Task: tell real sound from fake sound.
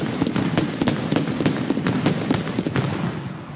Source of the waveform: real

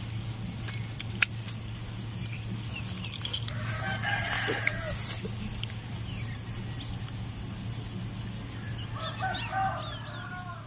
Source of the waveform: real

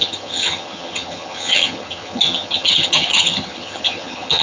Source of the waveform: fake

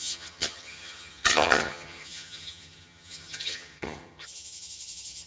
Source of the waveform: fake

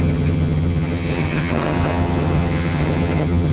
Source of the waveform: fake